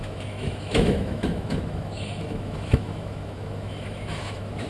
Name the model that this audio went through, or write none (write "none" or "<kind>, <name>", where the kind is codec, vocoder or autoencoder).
autoencoder, DAC-VAE